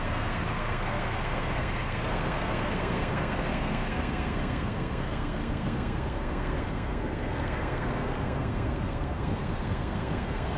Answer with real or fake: fake